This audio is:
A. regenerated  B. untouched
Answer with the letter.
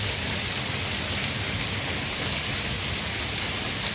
B